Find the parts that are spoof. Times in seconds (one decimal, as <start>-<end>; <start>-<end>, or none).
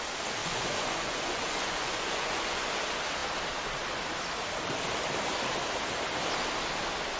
0.4-2.7